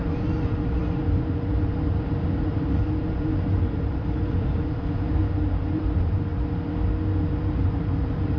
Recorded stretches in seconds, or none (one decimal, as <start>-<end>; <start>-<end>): 6.3-7.4